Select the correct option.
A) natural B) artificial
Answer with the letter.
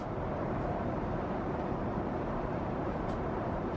B